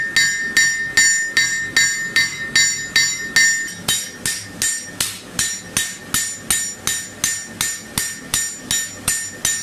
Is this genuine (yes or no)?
yes